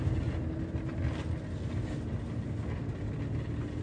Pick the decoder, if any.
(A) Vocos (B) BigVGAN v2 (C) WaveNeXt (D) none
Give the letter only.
D